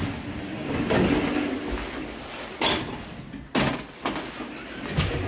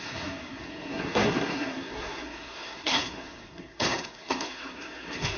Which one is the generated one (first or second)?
second